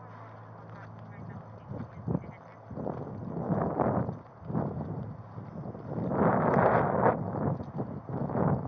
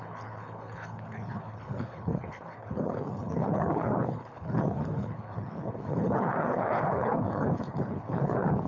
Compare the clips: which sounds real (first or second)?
first